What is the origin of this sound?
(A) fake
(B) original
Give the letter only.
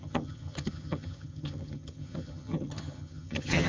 A